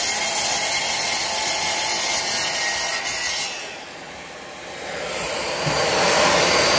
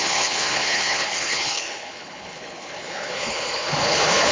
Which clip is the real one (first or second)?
first